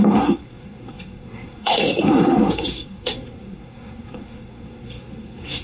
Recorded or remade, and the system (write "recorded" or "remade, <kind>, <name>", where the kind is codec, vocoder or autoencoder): remade, codec, SNAC